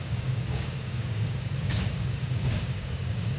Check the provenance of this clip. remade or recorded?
remade